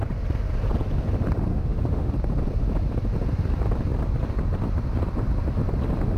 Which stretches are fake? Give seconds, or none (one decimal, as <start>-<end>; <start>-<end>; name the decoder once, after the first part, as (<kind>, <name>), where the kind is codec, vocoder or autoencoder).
1.5-2.1 (autoencoder, DAC-VAE)